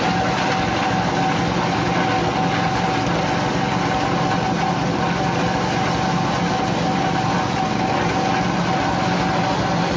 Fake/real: real